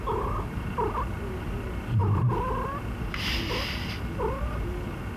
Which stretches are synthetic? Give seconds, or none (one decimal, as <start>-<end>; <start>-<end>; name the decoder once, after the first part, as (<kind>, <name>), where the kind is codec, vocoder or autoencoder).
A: none